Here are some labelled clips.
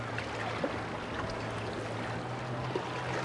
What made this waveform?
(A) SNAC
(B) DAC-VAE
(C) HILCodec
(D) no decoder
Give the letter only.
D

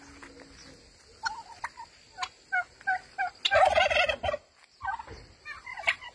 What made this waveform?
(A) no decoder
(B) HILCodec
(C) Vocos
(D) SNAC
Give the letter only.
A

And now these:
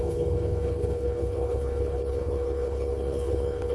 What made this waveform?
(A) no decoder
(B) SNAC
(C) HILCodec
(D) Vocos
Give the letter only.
C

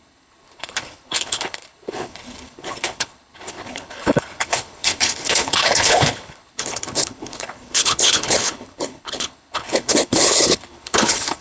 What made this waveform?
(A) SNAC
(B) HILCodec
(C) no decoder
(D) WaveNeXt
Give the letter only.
B